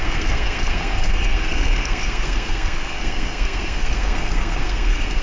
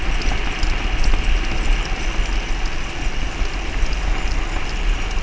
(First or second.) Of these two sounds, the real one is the second